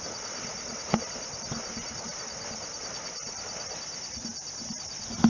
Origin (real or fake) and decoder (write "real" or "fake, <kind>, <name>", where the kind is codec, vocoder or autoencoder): real